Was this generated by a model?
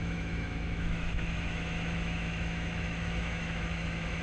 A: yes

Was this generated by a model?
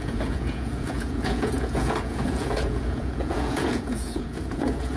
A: yes